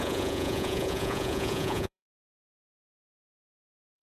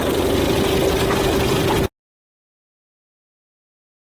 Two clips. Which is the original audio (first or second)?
second